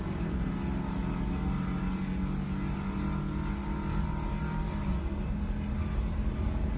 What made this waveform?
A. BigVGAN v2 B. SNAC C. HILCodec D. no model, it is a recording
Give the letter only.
D